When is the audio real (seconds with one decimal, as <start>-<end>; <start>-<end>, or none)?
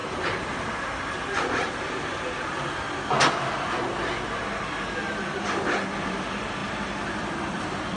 0.0-8.0